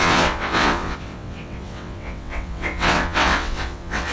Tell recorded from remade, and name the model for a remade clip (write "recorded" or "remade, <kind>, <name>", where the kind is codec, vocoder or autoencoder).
remade, vocoder, WaveNeXt